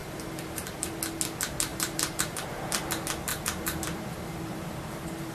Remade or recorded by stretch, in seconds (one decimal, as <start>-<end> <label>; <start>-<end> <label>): 0.0-0.9 remade; 0.9-1.7 recorded; 1.7-2.9 remade; 2.9-3.3 recorded; 3.3-5.3 remade